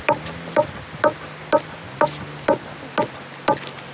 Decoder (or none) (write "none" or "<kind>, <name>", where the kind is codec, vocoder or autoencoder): none